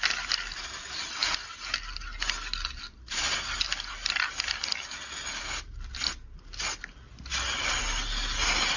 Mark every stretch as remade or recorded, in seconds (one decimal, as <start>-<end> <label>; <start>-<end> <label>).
0.0-8.8 recorded

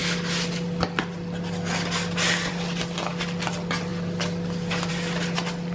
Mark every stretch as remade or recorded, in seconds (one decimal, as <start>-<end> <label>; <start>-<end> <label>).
0.0-5.7 recorded

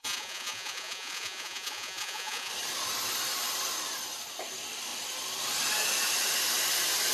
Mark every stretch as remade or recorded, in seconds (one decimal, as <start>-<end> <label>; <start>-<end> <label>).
0.0-2.5 remade; 2.5-7.1 recorded

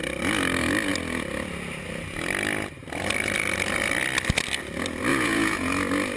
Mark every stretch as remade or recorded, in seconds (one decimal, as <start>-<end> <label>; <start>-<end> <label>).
0.0-5.1 recorded; 5.1-5.7 remade; 5.7-6.2 recorded